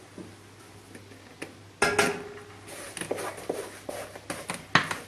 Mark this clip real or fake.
real